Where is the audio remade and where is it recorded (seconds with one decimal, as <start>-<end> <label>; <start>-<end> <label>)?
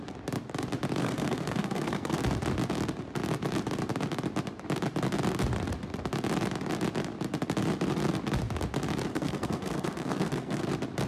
0.0-1.0 recorded; 1.0-2.2 remade; 2.2-9.1 recorded; 9.1-10.7 remade; 10.7-11.1 recorded